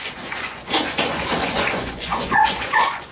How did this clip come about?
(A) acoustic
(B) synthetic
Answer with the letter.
B